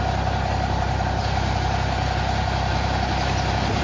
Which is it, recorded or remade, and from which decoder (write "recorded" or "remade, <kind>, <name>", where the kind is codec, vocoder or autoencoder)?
recorded